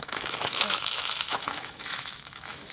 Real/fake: fake